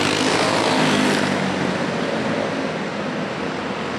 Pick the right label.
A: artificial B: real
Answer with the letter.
B